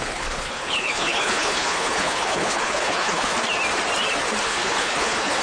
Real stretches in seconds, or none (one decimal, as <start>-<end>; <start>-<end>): 3.3-4.4